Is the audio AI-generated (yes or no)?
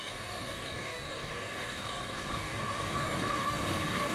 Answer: yes